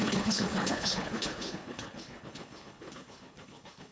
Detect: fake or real fake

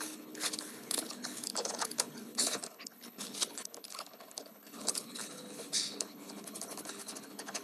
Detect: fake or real fake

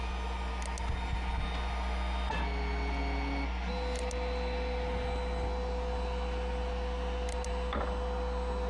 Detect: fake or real real